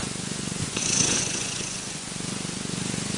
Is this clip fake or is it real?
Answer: fake